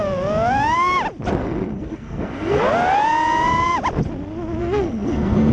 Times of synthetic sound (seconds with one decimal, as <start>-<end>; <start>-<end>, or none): 1.4-2.6; 4.6-5.5